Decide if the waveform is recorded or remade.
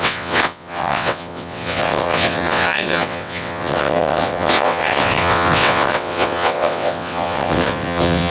remade